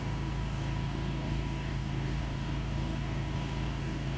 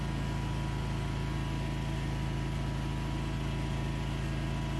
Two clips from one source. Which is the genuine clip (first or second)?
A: second